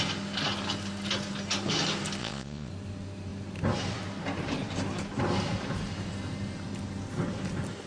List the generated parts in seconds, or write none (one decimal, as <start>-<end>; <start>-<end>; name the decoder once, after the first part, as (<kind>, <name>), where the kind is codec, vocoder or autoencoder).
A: 2.2-2.7 (vocoder, Vocos)